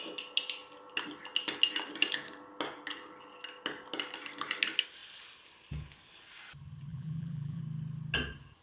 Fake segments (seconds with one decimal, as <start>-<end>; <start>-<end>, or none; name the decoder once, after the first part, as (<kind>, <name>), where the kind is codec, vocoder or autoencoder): 6.9-7.6 (vocoder, BigVGAN v2)